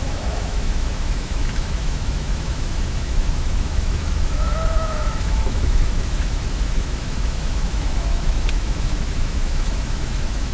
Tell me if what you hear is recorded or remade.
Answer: remade